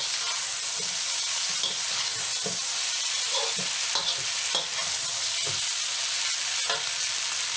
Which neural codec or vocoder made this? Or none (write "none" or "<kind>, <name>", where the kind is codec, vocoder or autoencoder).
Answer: none